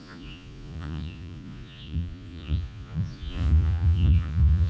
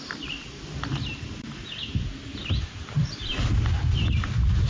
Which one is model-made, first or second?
first